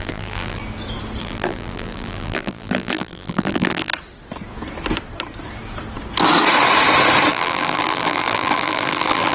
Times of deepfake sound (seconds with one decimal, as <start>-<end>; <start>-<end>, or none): 0.0-0.6; 1.2-3.9; 7.3-9.3